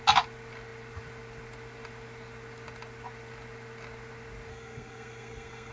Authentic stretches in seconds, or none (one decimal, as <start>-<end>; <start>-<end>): 0.0-4.5